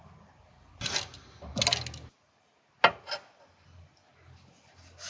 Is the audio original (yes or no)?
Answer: yes